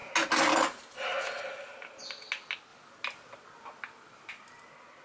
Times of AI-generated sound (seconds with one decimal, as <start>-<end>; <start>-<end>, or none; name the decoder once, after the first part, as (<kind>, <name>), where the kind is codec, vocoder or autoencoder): none

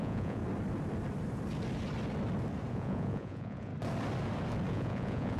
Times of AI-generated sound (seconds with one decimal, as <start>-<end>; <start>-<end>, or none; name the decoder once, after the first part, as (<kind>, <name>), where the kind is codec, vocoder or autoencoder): 0.0-0.4 (vocoder, Vocos); 2.7-3.7; 4.7-5.4

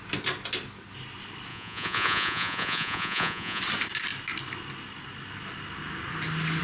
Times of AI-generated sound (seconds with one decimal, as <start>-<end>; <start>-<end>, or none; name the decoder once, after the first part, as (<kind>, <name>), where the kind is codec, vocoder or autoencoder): 1.5-3.6 (vocoder, Vocos)

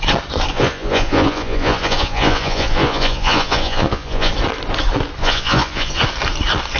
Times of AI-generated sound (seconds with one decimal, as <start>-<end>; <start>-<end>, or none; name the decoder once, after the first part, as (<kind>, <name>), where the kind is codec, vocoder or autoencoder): 0.5-4.3 (vocoder, Vocos); 5.2-6.0

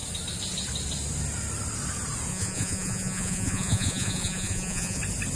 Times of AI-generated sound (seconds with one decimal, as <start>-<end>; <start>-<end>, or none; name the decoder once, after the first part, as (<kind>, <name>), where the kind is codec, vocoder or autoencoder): 2.3-5.0 (vocoder, Vocos)

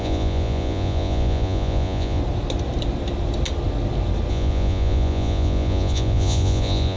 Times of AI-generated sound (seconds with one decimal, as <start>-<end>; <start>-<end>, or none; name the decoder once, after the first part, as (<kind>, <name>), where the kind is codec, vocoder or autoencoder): 0.0-2.2 (vocoder, Vocos); 4.3-7.0

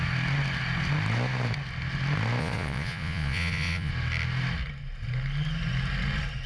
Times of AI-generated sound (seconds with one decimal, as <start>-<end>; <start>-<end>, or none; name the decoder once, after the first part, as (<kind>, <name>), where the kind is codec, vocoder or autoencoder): 2.4-3.9 (vocoder, Vocos)